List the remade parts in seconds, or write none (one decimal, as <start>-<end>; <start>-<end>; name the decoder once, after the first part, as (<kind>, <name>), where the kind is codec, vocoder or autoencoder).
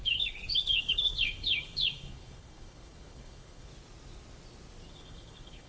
0.0-3.7 (codec, HILCodec); 4.9-5.7